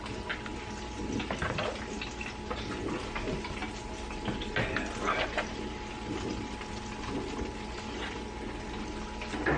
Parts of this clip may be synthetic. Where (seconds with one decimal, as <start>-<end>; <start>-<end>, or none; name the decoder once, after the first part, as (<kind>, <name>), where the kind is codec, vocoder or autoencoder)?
none

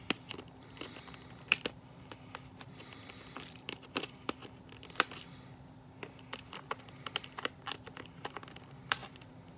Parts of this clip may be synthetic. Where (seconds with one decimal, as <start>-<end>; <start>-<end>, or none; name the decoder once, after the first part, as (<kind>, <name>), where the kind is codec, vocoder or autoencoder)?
0.0-9.6 (vocoder, BigVGAN v2)

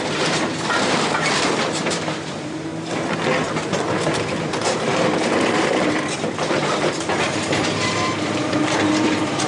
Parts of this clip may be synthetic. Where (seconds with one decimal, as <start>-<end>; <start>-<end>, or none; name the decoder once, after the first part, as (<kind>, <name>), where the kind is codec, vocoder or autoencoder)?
0.0-2.7 (vocoder, BigVGAN v2); 4.0-9.5